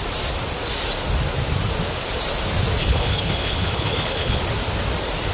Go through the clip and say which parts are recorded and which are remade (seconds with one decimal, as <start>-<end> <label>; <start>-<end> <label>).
0.0-2.8 recorded; 2.8-4.4 remade; 4.4-5.3 recorded